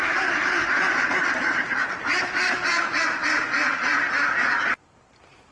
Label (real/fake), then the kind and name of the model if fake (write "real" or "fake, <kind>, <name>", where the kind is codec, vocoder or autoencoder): fake, vocoder, BigVGAN v2